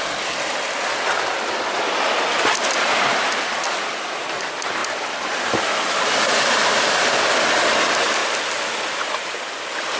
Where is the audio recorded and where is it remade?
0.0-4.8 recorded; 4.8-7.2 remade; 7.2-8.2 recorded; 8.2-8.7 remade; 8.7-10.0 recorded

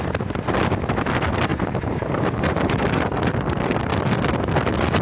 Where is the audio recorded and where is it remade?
0.0-1.5 recorded; 1.5-3.0 remade; 3.0-5.0 recorded

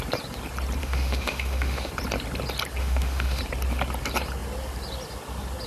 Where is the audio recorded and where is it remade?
0.0-0.8 recorded; 0.8-1.9 remade; 1.9-2.8 recorded; 2.8-3.4 remade; 3.4-5.7 recorded

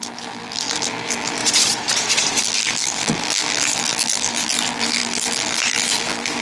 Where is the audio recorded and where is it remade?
0.0-1.4 remade; 1.4-2.4 recorded; 2.4-6.4 remade

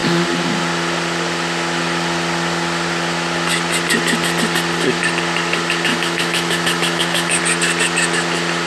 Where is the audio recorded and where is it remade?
0.0-5.9 recorded; 5.9-7.4 remade; 7.4-8.7 recorded

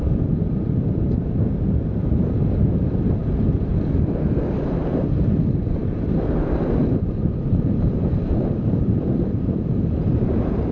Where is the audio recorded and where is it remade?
0.0-3.2 remade; 3.2-4.7 recorded; 4.7-10.7 remade

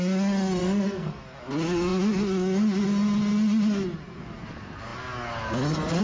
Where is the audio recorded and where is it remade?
0.0-0.6 recorded; 0.6-1.2 remade; 1.2-6.0 recorded

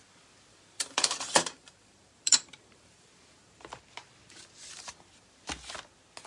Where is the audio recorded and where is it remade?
0.0-0.5 recorded; 0.5-3.8 remade; 3.8-6.3 recorded